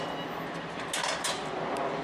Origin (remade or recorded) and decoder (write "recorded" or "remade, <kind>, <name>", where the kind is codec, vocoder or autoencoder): recorded